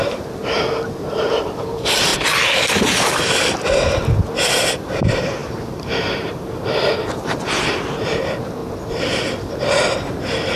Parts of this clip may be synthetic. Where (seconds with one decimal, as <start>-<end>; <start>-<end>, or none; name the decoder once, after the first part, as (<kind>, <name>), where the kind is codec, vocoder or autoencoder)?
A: 0.0-0.4 (vocoder, BigVGAN v2); 1.0-2.1; 4.7-8.6; 10.1-10.6